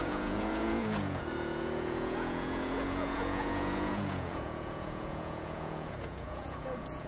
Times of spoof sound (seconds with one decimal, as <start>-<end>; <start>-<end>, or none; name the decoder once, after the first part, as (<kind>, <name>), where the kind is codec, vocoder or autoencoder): 0.0-7.1 (vocoder, Vocos)